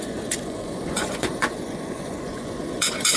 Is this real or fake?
fake